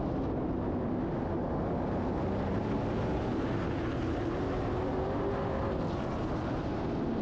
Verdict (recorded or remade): recorded